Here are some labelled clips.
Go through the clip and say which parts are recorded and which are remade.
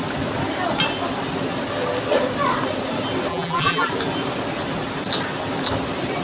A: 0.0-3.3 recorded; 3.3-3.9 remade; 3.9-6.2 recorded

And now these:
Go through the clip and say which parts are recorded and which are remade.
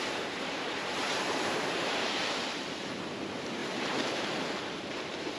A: 0.0-3.2 remade; 3.2-3.6 recorded; 3.6-4.2 remade; 4.2-5.4 recorded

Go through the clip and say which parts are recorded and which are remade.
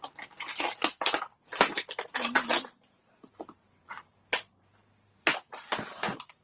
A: 0.0-2.5 recorded; 2.5-6.4 remade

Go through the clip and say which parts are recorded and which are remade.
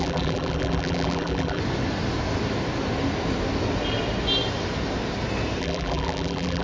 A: 0.0-1.6 remade; 1.6-5.6 recorded; 5.6-6.6 remade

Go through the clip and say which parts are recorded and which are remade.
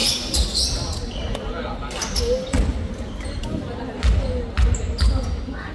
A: 0.0-5.7 recorded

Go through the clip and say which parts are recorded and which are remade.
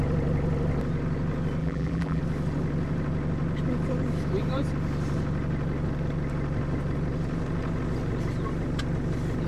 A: 0.0-1.6 recorded; 1.6-2.2 remade; 2.2-9.5 recorded